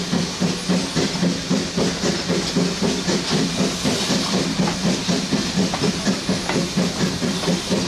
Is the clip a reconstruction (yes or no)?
no